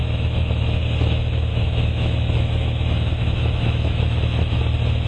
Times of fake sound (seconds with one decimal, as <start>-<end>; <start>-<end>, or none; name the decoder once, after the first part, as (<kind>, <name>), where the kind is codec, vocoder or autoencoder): 0.0-0.8 (autoencoder, DAC-VAE); 1.5-4.6